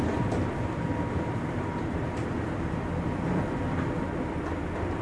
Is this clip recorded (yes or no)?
no